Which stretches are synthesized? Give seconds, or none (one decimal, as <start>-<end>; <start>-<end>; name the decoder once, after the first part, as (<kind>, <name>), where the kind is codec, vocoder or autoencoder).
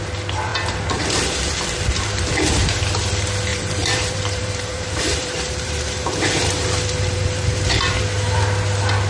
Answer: 3.5-8.0 (vocoder, BigVGAN v2)